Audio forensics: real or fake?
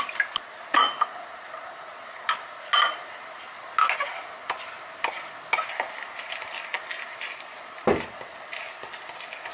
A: real